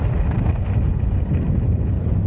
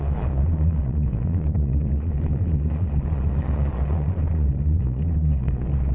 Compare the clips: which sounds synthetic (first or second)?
second